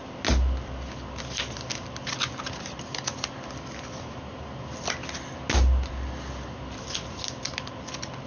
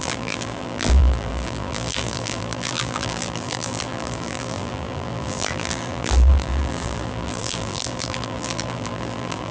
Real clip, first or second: first